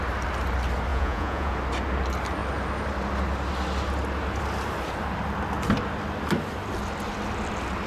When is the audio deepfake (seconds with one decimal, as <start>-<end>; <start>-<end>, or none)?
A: 0.9-1.5